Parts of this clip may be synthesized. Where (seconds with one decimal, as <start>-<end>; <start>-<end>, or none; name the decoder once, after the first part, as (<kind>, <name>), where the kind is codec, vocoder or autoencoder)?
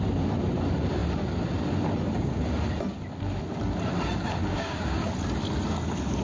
4.5-5.1 (codec, DAC)